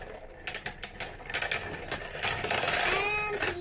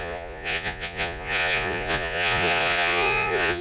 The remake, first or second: second